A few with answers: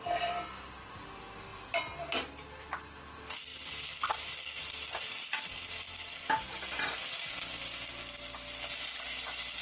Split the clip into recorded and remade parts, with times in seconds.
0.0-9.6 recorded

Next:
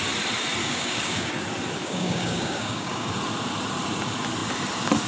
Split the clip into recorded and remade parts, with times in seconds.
0.0-0.6 recorded; 0.6-1.3 remade; 1.3-1.8 recorded; 1.8-3.1 remade; 3.1-5.1 recorded